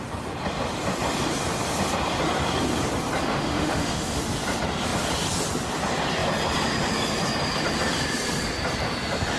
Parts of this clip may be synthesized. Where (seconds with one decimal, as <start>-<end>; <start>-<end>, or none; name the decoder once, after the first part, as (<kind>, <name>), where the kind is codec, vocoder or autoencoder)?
3.2-4.2 (autoencoder, DAC-VAE)